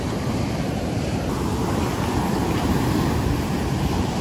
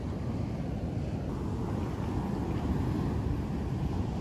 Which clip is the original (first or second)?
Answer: second